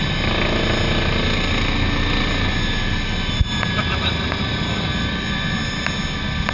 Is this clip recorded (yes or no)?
yes